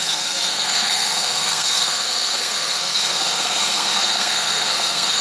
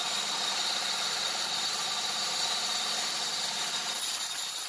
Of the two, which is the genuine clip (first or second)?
second